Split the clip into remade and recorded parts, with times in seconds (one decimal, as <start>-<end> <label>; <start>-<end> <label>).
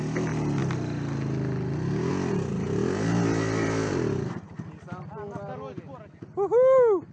0.0-7.1 recorded